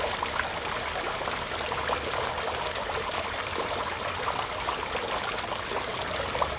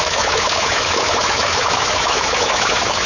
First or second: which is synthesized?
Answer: second